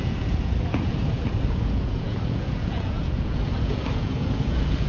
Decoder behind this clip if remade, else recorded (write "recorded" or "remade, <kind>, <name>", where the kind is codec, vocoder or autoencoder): remade, vocoder, Vocos